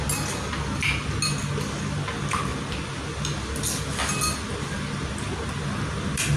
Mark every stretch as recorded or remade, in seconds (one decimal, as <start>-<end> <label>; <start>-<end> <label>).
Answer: 0.0-6.4 recorded